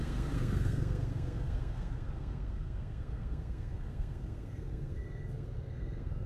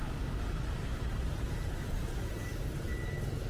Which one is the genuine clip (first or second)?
second